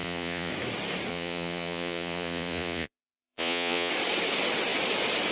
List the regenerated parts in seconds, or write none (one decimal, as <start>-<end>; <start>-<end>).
0.0-0.5; 1.1-3.9